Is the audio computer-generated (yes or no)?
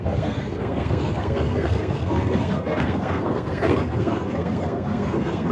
yes